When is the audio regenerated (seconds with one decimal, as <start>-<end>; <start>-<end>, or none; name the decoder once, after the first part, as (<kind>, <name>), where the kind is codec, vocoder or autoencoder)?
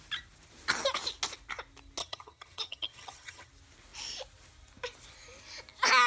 2.0-3.5 (vocoder, HiFi-GAN)